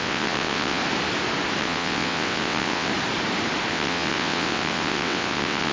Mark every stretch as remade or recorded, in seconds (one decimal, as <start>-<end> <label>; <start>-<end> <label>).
0.0-0.8 remade; 0.8-1.6 recorded; 1.6-2.9 remade; 2.9-3.7 recorded; 3.7-5.7 remade